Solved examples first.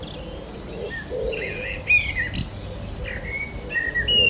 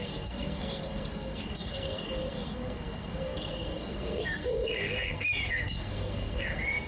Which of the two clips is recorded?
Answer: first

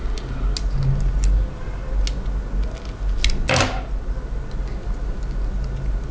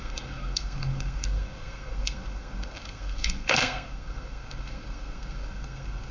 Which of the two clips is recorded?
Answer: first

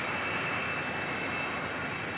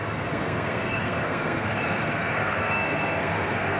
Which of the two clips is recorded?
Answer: first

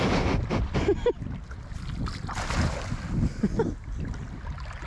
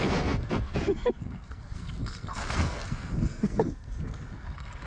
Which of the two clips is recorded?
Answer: first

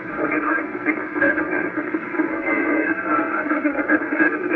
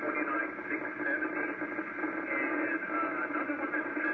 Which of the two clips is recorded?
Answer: second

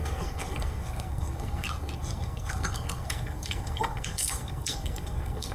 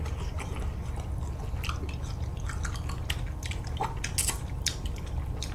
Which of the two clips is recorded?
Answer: second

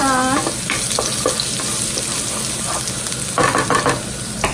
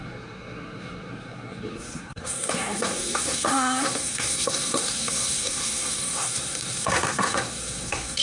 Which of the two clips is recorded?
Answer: first